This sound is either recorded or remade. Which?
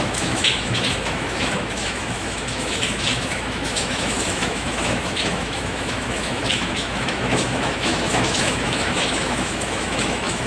remade